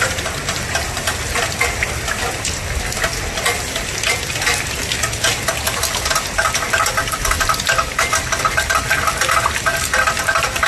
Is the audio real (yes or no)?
yes